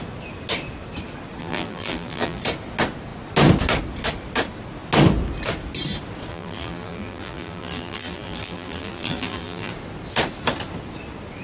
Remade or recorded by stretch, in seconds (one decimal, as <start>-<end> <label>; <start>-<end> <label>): 0.0-1.4 recorded; 1.4-2.4 remade; 2.4-6.3 recorded; 6.3-9.7 remade; 9.7-11.4 recorded